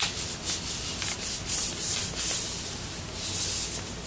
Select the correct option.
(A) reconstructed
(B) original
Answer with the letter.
B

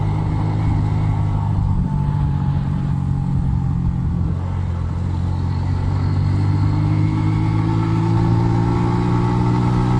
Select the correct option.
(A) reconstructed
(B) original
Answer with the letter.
B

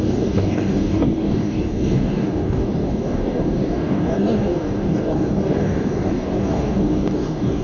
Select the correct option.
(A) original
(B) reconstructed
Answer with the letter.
B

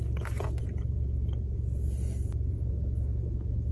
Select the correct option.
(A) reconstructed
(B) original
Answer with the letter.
B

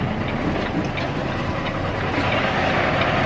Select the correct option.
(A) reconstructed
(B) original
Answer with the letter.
B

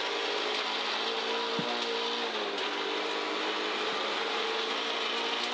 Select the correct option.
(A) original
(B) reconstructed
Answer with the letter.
A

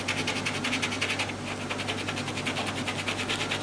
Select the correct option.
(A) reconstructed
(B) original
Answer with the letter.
B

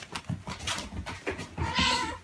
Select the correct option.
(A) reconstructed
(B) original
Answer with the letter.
B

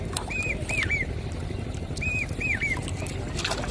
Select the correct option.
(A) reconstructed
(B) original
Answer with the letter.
B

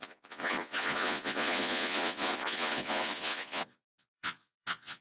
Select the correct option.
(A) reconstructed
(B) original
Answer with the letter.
A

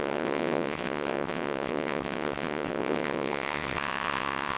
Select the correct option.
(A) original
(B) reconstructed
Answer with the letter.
B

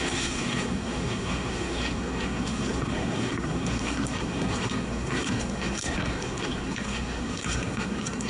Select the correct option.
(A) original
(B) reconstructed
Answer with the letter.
B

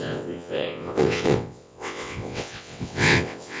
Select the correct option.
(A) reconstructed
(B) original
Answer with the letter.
A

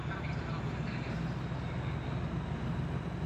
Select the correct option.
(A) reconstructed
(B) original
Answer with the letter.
B